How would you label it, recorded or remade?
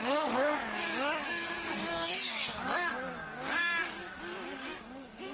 remade